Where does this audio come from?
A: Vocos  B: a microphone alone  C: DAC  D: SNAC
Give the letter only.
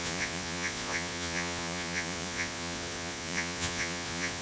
A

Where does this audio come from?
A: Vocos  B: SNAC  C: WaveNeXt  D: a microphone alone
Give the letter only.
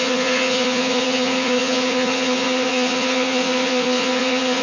A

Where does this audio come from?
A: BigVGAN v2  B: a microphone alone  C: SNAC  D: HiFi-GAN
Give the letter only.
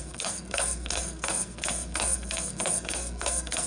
C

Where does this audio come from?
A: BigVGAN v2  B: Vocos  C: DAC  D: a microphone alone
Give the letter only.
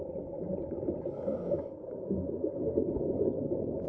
D